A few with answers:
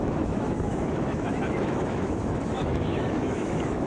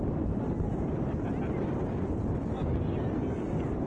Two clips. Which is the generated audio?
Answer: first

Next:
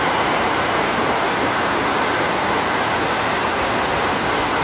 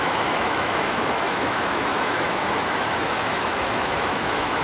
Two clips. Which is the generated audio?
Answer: second